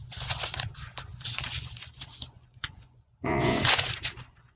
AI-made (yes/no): yes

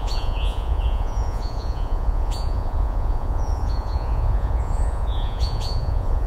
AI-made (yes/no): yes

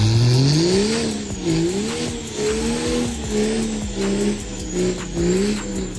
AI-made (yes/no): no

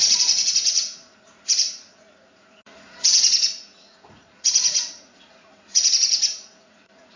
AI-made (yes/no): yes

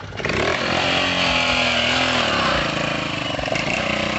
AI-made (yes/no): no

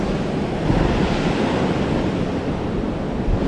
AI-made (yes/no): no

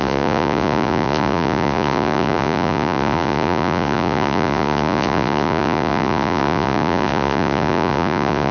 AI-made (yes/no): yes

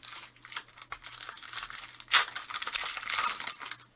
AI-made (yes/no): no